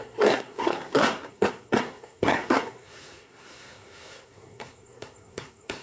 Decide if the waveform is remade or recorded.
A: remade